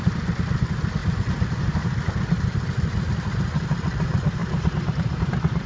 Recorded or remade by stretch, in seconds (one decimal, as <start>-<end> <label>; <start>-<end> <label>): 0.0-4.4 recorded; 4.4-5.7 remade